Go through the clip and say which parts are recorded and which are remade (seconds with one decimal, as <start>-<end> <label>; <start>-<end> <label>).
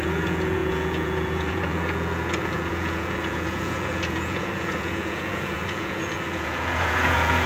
0.0-7.5 remade